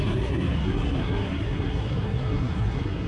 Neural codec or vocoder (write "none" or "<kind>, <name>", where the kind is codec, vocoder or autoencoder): codec, SNAC